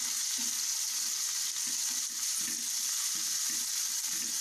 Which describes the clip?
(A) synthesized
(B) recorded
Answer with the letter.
B